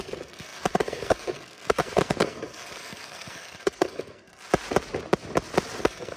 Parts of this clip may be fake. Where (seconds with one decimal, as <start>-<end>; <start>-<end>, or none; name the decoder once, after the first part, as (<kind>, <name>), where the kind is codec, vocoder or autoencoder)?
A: 0.0-4.5 (codec, SNAC); 5.8-6.2